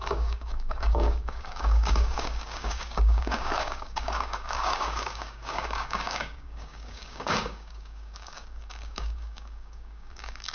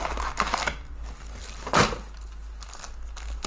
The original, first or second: second